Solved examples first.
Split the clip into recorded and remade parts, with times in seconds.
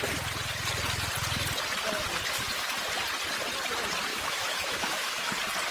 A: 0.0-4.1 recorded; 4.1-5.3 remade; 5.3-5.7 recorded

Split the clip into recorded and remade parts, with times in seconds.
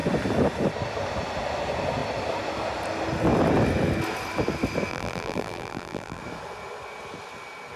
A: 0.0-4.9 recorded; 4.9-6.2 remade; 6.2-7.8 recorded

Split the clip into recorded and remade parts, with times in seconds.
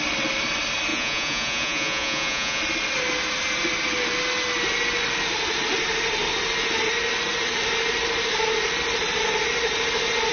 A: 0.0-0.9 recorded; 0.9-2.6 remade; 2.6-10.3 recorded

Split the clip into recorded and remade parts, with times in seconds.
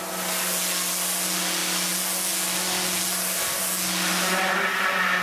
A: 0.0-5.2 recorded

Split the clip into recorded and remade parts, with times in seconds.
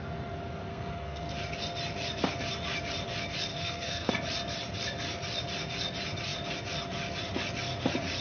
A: 0.0-0.7 recorded; 0.7-1.2 remade; 1.2-3.5 recorded; 3.5-4.1 remade; 4.1-8.2 recorded